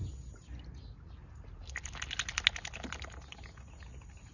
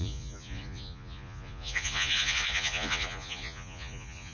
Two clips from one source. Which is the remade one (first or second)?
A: second